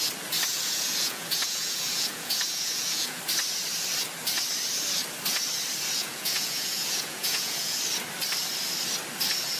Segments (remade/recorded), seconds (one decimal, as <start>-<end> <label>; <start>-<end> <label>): 0.0-0.5 recorded; 0.5-3.2 remade; 3.2-6.0 recorded; 6.0-7.8 remade; 7.8-9.6 recorded